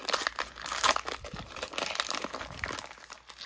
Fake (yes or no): no